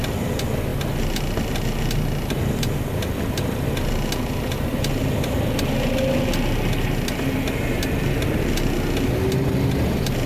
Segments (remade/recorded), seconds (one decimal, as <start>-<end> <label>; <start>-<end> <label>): 0.0-10.3 recorded